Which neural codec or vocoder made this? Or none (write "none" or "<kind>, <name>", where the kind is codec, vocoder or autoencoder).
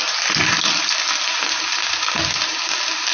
none